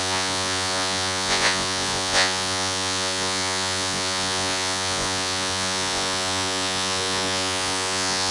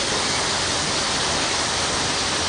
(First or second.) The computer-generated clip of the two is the first